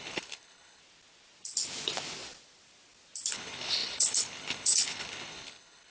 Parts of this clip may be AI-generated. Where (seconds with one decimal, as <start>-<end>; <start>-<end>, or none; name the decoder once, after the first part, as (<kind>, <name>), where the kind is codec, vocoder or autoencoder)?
0.0-0.8 (codec, HILCodec); 3.3-5.9